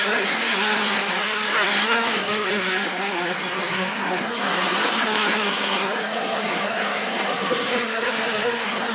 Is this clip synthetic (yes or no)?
yes